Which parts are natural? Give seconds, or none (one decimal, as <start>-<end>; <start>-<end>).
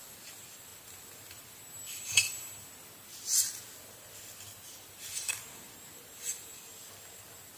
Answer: 0.0-7.6